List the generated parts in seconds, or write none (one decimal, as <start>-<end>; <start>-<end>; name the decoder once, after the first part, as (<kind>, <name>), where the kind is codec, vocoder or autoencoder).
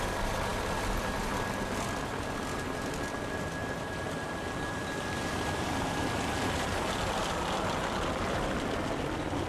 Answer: 3.6-6.0 (vocoder, BigVGAN v2)